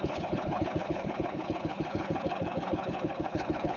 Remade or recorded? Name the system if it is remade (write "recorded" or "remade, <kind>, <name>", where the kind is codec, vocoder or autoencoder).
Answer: remade, codec, HILCodec